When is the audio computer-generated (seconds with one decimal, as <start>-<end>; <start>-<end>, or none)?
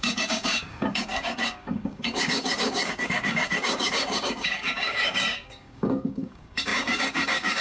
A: 0.0-7.6